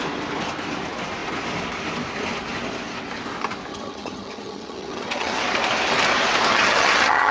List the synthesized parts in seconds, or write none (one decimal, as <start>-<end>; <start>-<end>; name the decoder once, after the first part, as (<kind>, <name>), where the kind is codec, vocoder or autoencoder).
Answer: 3.7-5.4 (vocoder, HiFi-GAN); 6.5-7.3